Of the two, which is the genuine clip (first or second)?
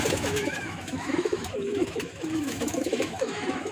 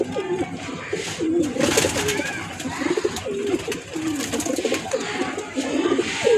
second